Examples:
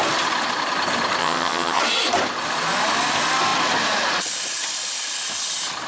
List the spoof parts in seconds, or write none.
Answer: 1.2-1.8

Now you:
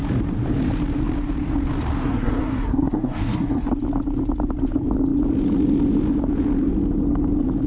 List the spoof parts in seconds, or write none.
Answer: 2.0-3.7

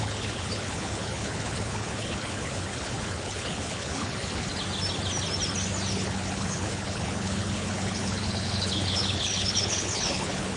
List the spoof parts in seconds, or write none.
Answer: 0.0-4.5; 5.9-10.6

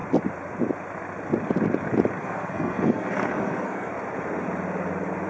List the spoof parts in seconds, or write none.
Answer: 2.2-3.9